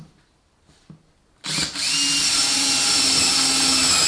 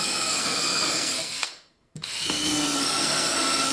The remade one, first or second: second